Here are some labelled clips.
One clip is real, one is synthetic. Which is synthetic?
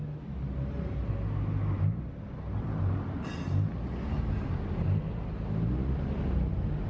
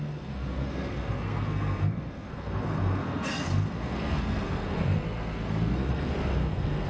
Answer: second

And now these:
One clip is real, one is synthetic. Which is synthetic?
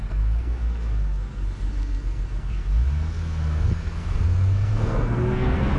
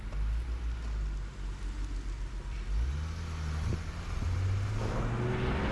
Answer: first